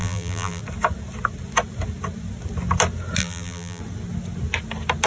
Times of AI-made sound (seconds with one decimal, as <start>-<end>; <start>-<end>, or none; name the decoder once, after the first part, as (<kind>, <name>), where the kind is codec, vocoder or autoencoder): 0.0-0.6 (vocoder, BigVGAN v2); 3.2-3.8